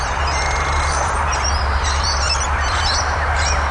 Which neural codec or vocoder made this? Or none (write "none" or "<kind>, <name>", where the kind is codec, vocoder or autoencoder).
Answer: vocoder, BigVGAN v2